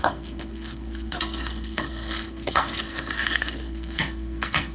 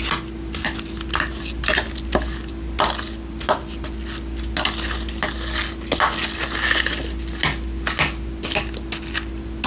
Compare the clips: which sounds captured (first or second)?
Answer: second